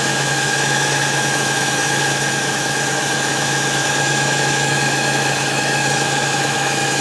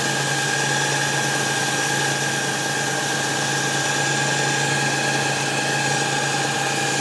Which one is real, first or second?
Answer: second